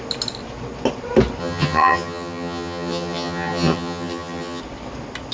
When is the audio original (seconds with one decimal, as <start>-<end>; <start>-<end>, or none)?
0.0-1.4; 4.6-5.3